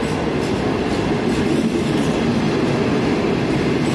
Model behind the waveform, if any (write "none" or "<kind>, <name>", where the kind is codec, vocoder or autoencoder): none